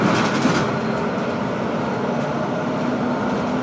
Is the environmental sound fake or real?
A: real